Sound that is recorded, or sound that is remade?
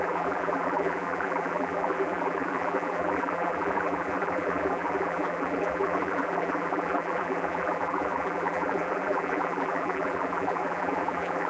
remade